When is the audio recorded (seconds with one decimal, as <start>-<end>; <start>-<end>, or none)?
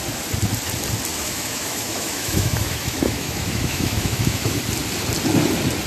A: 0.0-1.1; 4.6-5.9